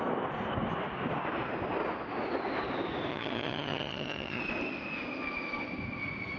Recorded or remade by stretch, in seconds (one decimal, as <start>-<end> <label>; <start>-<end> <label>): 0.0-3.1 recorded; 3.1-4.4 remade; 4.4-6.4 recorded